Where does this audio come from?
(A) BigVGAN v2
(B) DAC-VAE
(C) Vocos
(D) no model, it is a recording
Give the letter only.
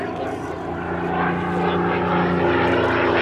D